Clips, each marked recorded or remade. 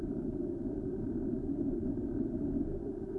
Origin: remade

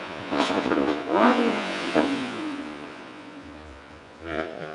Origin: remade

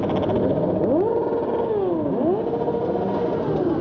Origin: recorded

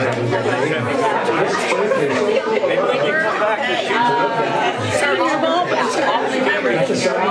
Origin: recorded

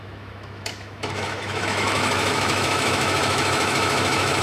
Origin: remade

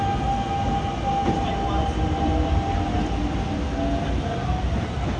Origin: recorded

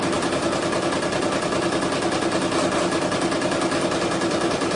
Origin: recorded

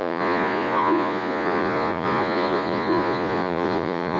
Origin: remade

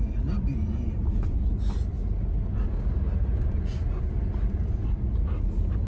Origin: recorded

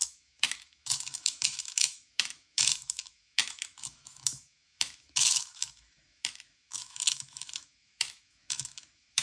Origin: remade